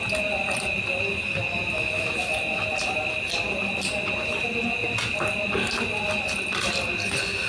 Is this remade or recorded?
recorded